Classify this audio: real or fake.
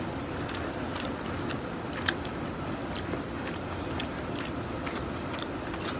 real